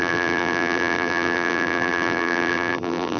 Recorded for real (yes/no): no